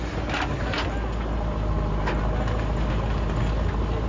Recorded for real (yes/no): yes